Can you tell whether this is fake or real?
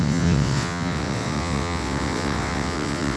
fake